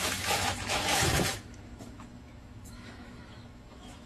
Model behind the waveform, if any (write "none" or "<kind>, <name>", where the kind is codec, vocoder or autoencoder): autoencoder, DAC-VAE